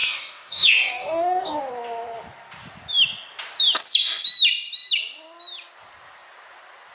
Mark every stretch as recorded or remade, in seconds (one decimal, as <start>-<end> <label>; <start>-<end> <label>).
0.0-1.7 remade; 1.7-6.9 recorded